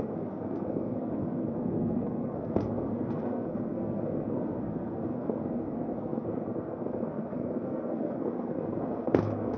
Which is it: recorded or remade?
remade